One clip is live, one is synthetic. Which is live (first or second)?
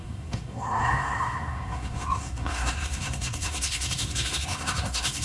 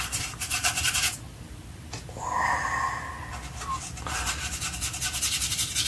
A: second